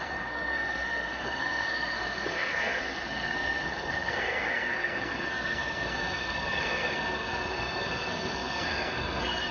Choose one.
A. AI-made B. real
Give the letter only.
A